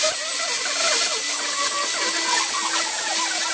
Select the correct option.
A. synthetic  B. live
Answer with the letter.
B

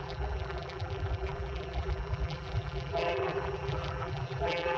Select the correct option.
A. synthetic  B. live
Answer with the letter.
A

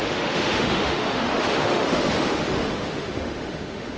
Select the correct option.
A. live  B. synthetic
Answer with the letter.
B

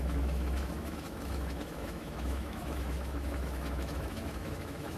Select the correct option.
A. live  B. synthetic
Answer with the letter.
B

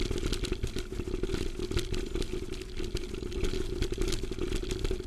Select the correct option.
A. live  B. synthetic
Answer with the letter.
A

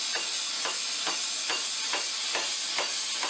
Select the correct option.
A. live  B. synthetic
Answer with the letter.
A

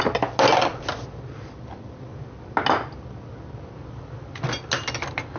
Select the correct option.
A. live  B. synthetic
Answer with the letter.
A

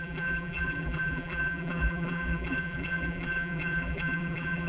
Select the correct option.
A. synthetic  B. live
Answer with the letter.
A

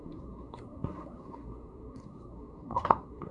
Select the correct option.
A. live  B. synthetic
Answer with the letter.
B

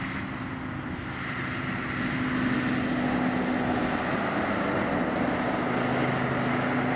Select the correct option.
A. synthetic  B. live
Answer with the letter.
B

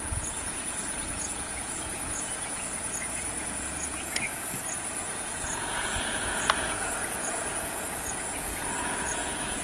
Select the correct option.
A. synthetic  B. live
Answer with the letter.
A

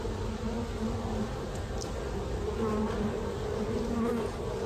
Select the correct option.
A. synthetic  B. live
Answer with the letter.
B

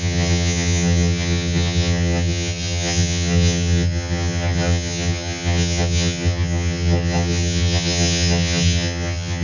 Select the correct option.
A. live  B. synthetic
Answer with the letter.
B